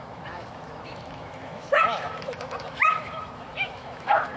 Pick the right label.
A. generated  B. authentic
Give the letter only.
A